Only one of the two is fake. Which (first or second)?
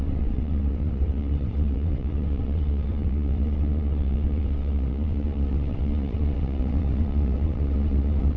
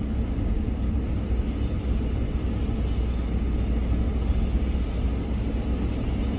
first